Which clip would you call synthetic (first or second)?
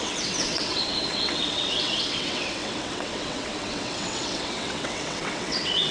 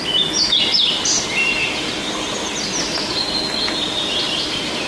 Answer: first